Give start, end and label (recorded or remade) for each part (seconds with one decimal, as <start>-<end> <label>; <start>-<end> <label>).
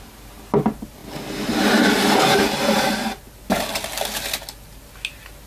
0.0-5.5 recorded